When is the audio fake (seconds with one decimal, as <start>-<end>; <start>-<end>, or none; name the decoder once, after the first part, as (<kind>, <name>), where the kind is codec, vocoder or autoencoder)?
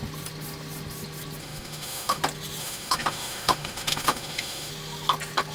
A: 1.4-2.2 (autoencoder, DAC-VAE); 2.6-4.7